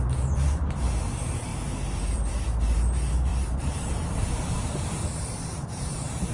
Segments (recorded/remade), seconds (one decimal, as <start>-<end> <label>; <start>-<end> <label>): 0.0-6.3 remade